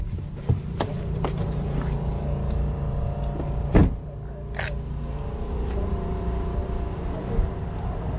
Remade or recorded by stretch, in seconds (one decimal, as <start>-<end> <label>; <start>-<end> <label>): 0.0-3.8 remade; 3.8-5.5 recorded; 5.5-6.6 remade; 6.6-7.1 recorded; 7.1-8.2 remade